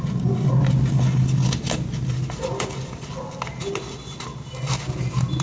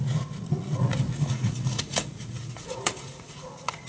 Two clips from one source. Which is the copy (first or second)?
second